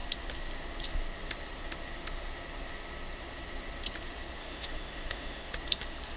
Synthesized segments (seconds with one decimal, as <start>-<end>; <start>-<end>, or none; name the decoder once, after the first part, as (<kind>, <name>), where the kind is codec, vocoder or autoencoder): 4.4-5.5 (autoencoder, DAC-VAE)